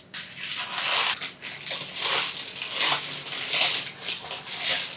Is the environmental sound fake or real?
real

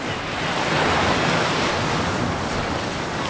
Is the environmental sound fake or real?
real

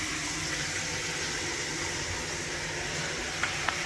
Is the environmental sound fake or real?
real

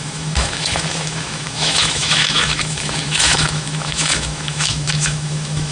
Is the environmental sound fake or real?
fake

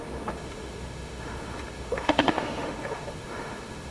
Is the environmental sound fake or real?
fake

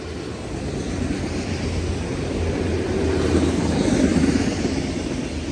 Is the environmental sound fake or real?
real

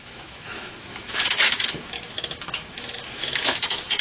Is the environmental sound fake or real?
fake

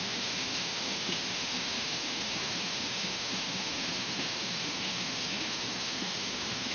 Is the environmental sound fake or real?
fake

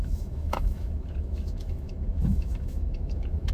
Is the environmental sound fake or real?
fake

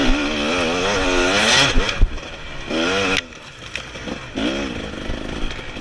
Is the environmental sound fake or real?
real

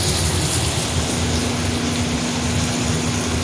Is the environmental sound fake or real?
real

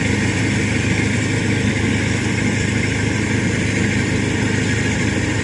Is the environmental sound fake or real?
real